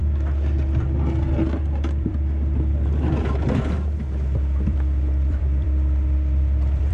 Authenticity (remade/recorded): remade